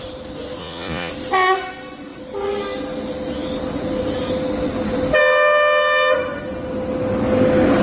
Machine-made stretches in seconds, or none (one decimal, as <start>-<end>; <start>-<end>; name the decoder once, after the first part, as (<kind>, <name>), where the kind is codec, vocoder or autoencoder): 0.6-1.1 (vocoder, Vocos)